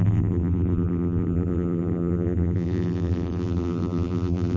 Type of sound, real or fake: fake